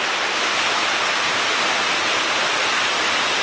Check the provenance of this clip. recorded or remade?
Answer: recorded